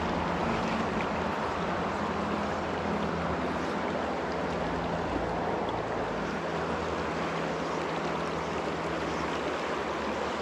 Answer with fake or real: real